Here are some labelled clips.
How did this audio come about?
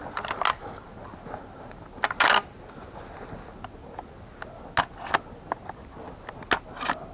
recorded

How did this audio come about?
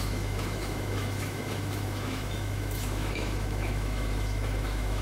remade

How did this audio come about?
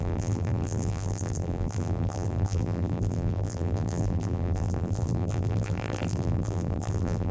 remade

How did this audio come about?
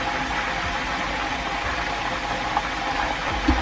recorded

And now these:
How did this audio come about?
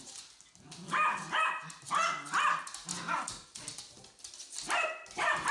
recorded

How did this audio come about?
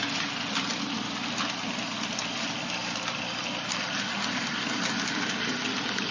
recorded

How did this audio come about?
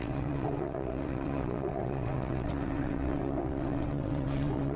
remade